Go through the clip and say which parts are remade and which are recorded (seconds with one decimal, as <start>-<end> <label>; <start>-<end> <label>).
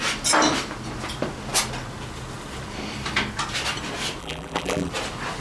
0.0-4.2 recorded; 4.2-4.9 remade; 4.9-5.4 recorded